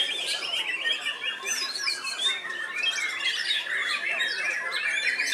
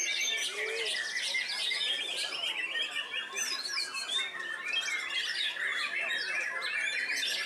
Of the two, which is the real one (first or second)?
second